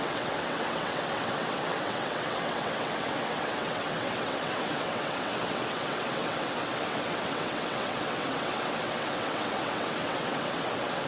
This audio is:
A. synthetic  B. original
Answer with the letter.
A